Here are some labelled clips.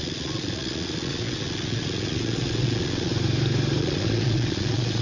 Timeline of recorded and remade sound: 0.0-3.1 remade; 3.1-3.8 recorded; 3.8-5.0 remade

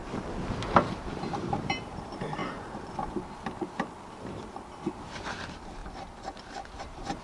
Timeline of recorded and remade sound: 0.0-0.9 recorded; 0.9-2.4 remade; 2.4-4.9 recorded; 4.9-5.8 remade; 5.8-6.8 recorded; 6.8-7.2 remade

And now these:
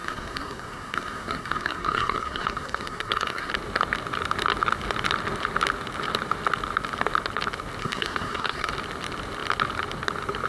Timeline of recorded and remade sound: 0.0-3.5 remade; 3.5-7.8 recorded; 7.8-8.7 remade; 8.7-10.5 recorded

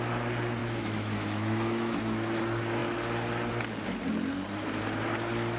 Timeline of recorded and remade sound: 0.0-0.6 recorded; 0.6-2.4 remade; 2.4-5.6 recorded

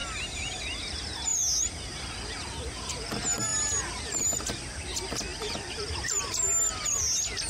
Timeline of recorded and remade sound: 0.0-0.8 remade; 0.8-3.5 recorded; 3.5-4.2 remade; 4.2-5.3 recorded; 5.3-5.9 remade; 5.9-7.5 recorded

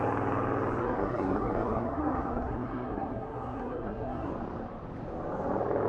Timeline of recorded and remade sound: 0.0-0.8 recorded; 0.8-4.3 remade; 4.3-5.9 recorded

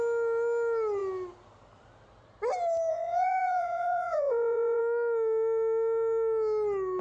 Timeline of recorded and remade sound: 0.0-2.9 recorded; 2.9-4.8 remade; 4.8-7.0 recorded